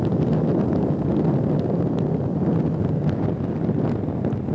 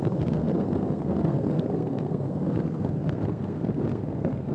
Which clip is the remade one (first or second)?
second